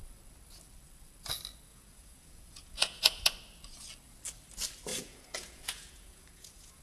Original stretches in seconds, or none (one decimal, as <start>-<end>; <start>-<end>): 0.0-1.7; 3.3-4.9